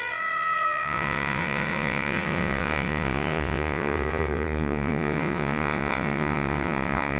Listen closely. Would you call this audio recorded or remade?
remade